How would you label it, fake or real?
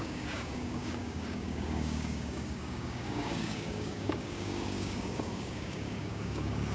fake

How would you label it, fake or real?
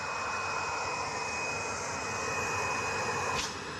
real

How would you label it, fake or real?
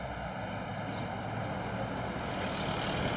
real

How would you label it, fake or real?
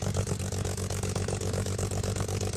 fake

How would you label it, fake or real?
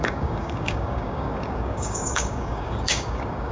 fake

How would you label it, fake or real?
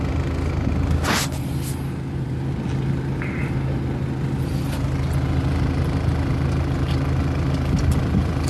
real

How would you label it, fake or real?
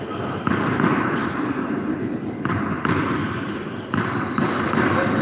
real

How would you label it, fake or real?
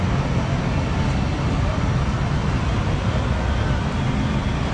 real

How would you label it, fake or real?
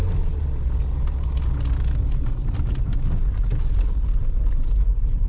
real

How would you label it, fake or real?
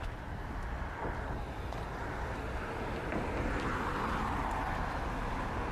real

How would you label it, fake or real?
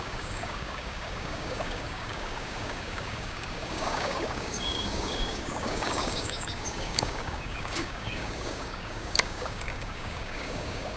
fake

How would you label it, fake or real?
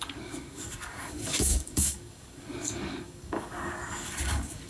fake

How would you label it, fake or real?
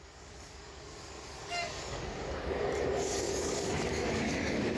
fake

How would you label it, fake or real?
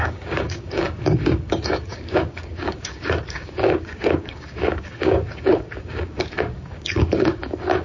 fake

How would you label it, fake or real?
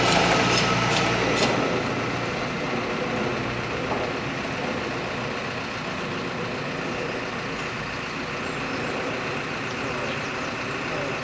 real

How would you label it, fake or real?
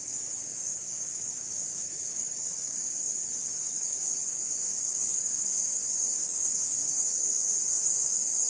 fake